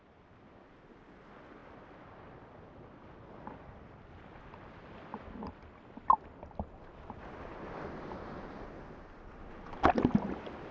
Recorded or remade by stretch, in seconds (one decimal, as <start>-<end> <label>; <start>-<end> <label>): 0.0-10.7 recorded